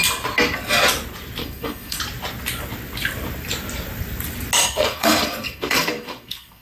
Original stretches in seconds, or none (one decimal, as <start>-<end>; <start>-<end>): 0.0-1.4; 2.0-4.6